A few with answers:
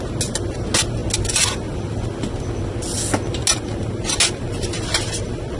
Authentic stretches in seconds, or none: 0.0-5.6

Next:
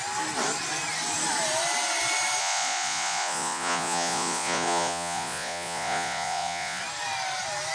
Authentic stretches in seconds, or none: 0.0-2.4; 6.8-7.7

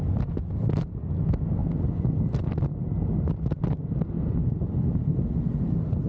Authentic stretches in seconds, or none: 0.0-6.1